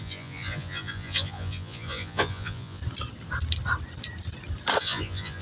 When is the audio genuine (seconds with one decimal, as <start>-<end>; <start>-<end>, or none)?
2.8-4.8